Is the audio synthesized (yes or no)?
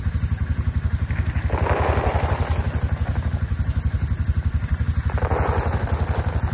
no